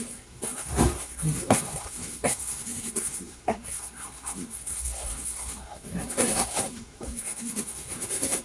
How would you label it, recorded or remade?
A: remade